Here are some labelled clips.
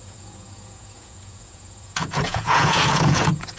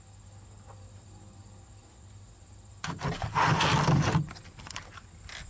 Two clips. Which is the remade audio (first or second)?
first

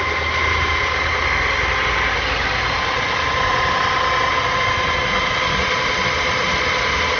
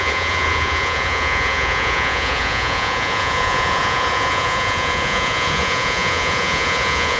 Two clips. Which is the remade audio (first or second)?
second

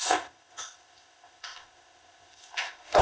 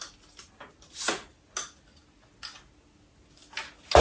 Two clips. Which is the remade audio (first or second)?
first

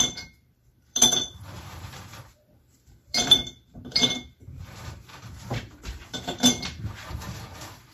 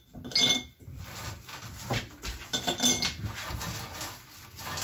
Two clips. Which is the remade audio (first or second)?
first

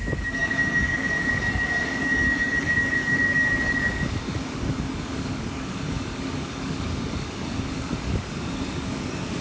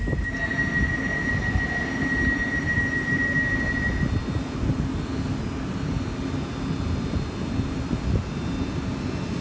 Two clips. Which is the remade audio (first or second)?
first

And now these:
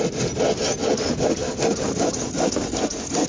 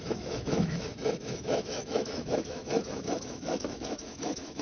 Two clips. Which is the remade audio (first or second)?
second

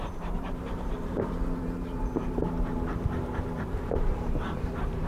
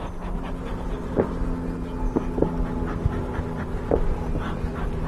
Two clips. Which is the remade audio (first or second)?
first